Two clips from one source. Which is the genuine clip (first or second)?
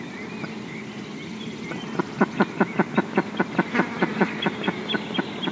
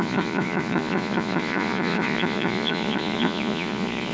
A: first